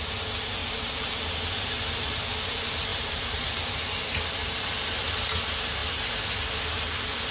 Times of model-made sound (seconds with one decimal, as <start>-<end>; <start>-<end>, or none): 0.6-1.3; 2.9-3.7; 4.4-5.0